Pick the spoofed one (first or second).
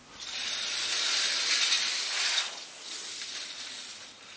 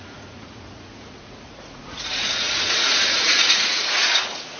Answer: second